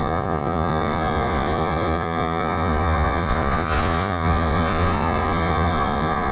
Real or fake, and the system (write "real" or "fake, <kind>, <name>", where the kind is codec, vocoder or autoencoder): fake, vocoder, Vocos